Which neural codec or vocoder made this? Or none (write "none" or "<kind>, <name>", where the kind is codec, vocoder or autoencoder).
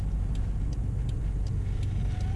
none